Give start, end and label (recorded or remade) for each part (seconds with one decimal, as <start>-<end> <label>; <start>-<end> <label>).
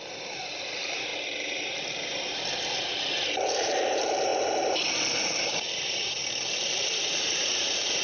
0.0-1.1 remade; 1.1-3.4 recorded; 3.4-4.3 remade; 4.3-4.9 recorded; 4.9-6.2 remade; 6.2-6.7 recorded; 6.7-8.0 remade